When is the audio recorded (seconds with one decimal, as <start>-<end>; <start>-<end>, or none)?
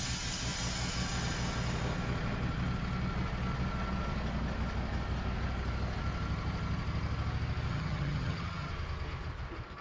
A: 0.0-7.7; 8.7-9.8